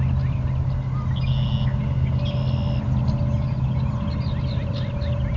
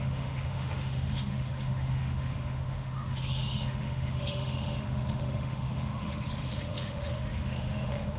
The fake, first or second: second